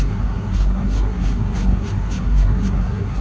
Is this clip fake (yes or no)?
yes